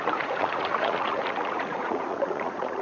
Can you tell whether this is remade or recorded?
remade